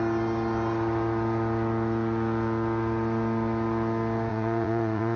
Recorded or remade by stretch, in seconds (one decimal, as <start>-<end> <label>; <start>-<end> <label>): 0.0-4.3 recorded; 4.3-5.2 remade